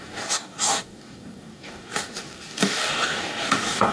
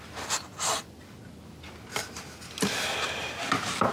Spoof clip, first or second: first